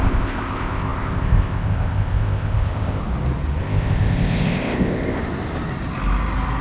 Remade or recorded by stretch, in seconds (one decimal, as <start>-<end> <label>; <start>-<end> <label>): 0.0-3.0 remade; 3.0-3.6 recorded; 3.6-5.2 remade; 5.2-6.6 recorded